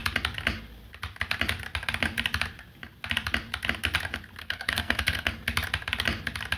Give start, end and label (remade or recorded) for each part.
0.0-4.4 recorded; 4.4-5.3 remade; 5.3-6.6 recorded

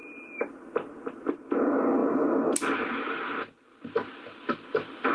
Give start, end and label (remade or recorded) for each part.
0.0-0.9 remade; 0.9-5.1 recorded

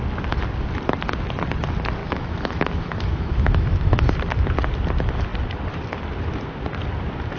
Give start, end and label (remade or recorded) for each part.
0.0-2.0 recorded; 2.0-4.1 remade; 4.1-7.4 recorded

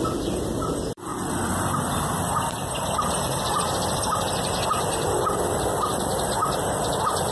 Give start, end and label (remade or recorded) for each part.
0.0-6.4 remade; 6.4-7.3 recorded

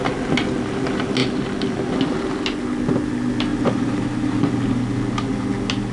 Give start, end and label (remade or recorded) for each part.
0.0-3.5 recorded; 3.5-4.5 remade; 4.5-5.9 recorded